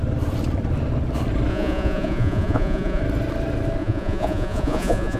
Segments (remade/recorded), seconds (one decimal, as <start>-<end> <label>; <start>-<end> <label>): 0.0-1.5 recorded; 1.5-3.0 remade; 3.0-3.8 recorded; 3.8-5.2 remade